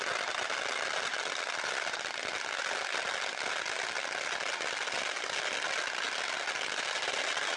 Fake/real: real